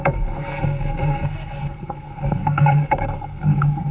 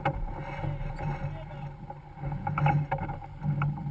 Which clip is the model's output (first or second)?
first